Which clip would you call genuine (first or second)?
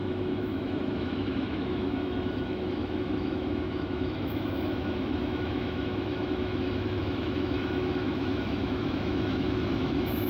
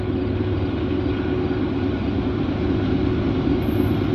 second